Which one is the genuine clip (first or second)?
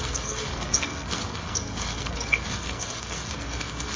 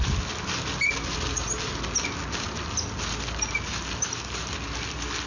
second